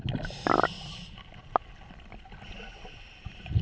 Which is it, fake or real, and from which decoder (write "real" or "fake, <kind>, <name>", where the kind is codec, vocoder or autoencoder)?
real